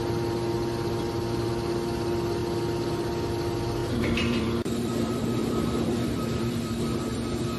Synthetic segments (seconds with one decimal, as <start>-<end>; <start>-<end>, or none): 3.8-7.0